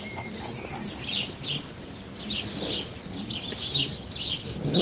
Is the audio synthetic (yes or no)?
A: no